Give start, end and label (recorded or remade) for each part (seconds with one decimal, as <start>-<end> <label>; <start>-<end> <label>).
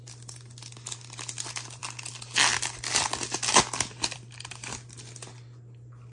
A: 0.0-6.1 recorded